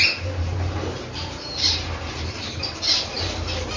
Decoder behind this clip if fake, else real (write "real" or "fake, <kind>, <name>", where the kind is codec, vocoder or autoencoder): fake, vocoder, BigVGAN v2